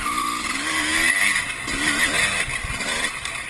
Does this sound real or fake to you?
real